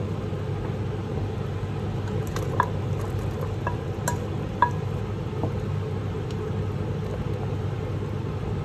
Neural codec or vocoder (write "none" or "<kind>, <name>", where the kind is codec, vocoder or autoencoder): none